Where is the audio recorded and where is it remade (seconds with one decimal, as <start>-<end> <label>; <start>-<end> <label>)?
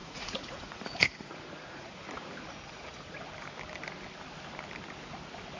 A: 0.0-3.3 remade; 3.3-5.6 recorded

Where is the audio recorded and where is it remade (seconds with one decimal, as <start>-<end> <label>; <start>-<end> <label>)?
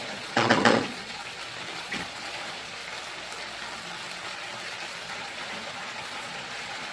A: 0.0-1.2 remade; 1.2-1.8 recorded; 1.8-2.8 remade; 2.8-5.1 recorded; 5.1-6.9 remade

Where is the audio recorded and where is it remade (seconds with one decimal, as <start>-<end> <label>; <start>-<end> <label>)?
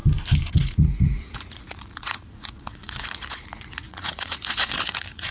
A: 0.0-0.5 recorded; 0.5-5.3 remade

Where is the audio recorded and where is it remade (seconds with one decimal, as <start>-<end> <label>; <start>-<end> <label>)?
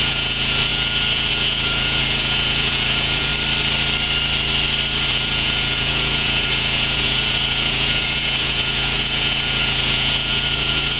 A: 0.0-3.3 remade; 3.3-5.1 recorded; 5.1-11.0 remade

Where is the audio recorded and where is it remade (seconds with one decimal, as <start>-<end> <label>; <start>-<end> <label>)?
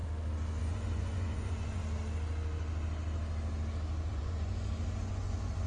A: 0.0-0.6 recorded; 0.6-1.8 remade; 1.8-4.1 recorded; 4.1-5.7 remade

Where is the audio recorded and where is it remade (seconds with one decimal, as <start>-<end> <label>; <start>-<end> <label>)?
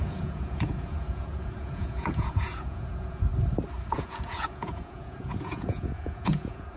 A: 0.0-3.3 remade; 3.3-3.9 recorded; 3.9-6.8 remade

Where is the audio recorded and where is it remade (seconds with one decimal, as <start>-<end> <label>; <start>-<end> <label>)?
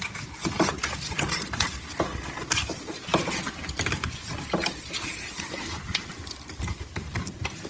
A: 0.0-7.7 recorded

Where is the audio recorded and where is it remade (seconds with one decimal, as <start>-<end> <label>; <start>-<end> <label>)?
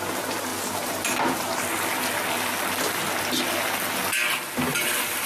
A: 0.0-5.3 recorded